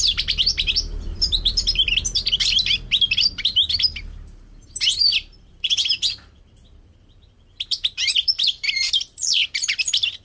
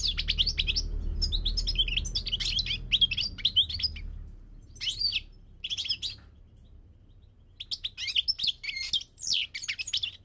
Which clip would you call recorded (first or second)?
second